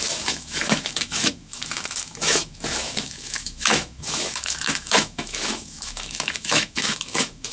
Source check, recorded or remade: remade